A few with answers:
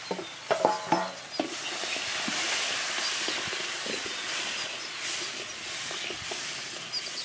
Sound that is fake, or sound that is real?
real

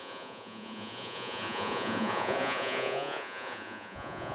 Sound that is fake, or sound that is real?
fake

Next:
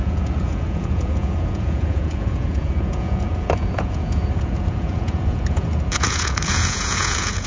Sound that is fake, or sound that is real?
fake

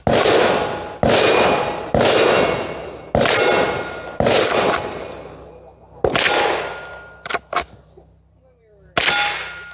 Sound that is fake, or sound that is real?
real